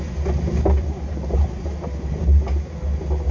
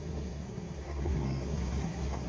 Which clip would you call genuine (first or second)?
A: first